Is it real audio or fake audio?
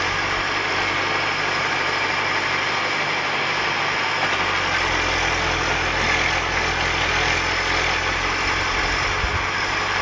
real